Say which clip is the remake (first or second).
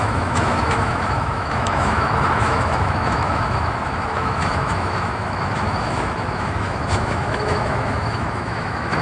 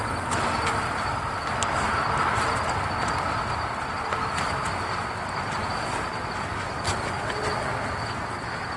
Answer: first